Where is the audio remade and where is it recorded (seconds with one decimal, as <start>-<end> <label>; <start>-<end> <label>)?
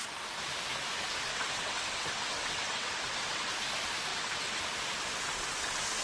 0.0-1.3 recorded; 1.3-3.5 remade; 3.5-4.1 recorded; 4.1-4.6 remade; 4.6-6.0 recorded